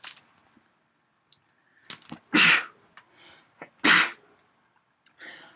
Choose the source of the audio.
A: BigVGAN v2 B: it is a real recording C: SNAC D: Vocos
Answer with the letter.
B